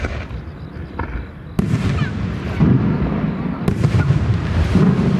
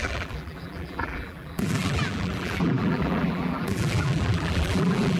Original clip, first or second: first